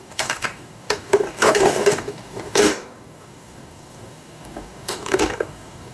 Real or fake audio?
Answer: fake